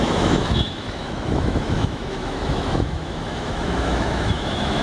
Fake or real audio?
fake